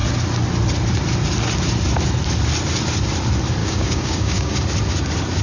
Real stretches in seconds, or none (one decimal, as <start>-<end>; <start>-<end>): 0.0-3.6; 4.5-5.4

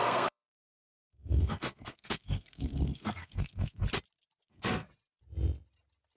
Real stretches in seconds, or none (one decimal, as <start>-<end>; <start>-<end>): 3.8-4.5; 4.9-6.2

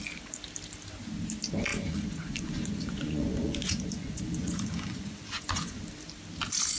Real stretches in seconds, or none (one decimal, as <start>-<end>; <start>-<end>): 0.0-1.7; 5.8-6.8

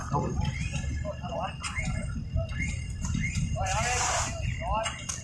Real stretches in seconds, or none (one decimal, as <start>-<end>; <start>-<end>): 0.0-5.2